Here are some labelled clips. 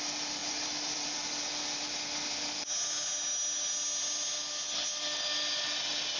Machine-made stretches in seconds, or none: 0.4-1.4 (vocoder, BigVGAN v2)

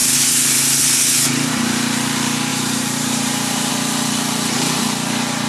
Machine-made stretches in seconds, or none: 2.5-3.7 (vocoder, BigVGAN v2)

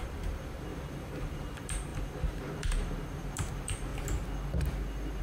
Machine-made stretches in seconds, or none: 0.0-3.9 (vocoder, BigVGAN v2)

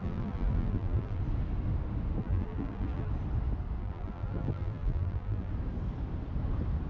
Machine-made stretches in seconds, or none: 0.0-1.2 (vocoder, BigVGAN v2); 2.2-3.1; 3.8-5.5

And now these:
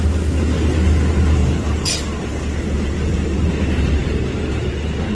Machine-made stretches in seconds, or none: 1.4-3.5 (vocoder, BigVGAN v2)

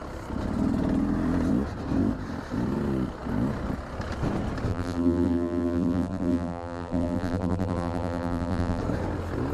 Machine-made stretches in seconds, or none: 4.7-8.8 (vocoder, BigVGAN v2)

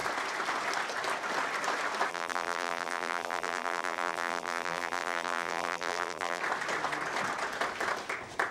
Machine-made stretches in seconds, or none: 2.1-6.4 (vocoder, BigVGAN v2)